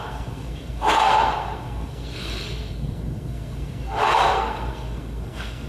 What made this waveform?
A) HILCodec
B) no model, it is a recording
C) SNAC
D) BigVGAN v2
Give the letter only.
C